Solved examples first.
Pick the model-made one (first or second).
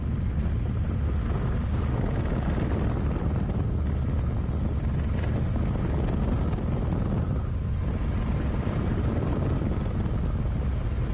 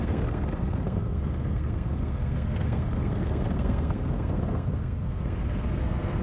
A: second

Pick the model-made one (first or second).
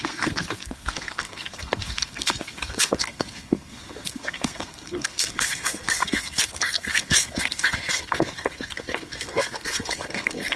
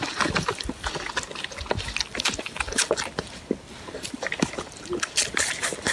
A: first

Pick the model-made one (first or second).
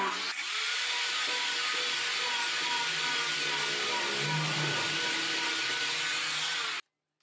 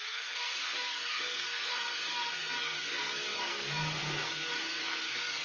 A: second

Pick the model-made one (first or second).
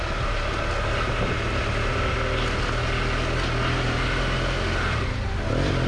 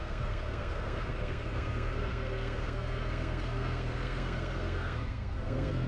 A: second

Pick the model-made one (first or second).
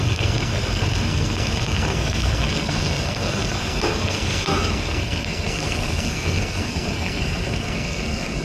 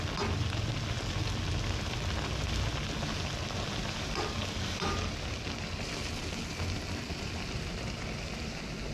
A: first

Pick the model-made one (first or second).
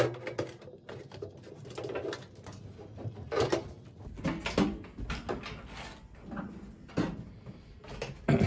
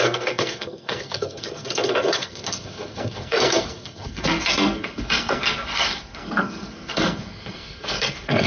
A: second